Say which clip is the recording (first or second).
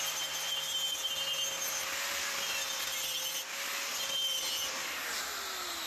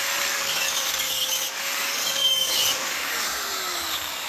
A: first